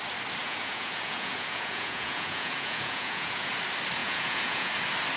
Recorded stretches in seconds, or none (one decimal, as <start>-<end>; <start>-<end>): 0.0-0.4; 3.5-4.0; 4.7-5.2